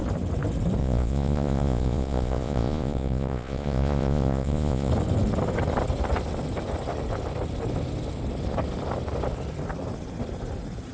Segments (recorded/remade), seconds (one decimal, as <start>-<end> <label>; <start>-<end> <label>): 0.0-0.8 recorded; 0.8-4.9 remade; 4.9-10.9 recorded

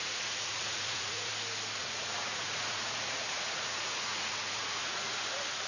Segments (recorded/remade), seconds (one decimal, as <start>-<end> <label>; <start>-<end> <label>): 0.0-1.3 remade; 1.3-1.8 recorded; 1.8-5.2 remade; 5.2-5.7 recorded

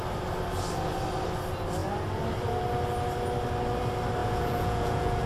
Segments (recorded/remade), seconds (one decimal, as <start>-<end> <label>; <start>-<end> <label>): 0.0-4.2 recorded; 4.2-5.3 remade

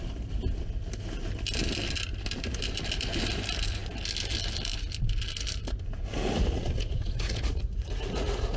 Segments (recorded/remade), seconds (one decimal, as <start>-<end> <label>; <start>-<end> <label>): 0.0-6.1 recorded; 6.1-8.6 remade

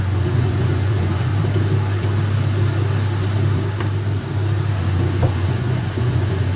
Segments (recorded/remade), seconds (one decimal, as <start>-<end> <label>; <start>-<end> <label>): 0.0-1.3 remade; 1.3-4.8 recorded; 4.8-6.6 remade

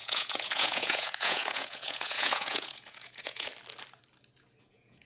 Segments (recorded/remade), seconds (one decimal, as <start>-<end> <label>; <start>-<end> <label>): 0.0-3.5 remade; 3.5-4.6 recorded; 4.6-5.1 remade

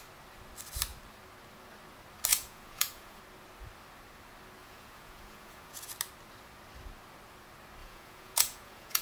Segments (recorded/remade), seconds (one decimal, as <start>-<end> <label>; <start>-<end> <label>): 0.0-2.3 recorded; 2.3-3.2 remade; 3.2-4.6 recorded; 4.6-5.9 remade; 5.9-7.8 recorded; 7.8-9.0 remade

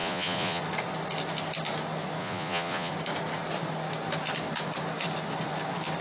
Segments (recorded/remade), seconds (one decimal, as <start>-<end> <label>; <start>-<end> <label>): 0.0-0.6 remade; 0.6-2.2 recorded; 2.2-2.9 remade; 2.9-6.0 recorded